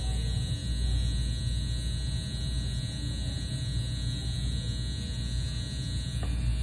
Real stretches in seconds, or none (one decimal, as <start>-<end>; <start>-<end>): 0.0-6.6